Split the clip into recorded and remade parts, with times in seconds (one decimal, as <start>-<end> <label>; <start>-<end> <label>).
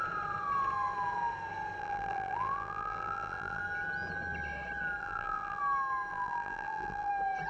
0.0-1.8 recorded; 1.8-3.6 remade; 3.6-5.0 recorded; 5.0-5.6 remade; 5.6-6.1 recorded; 6.1-7.1 remade; 7.1-7.5 recorded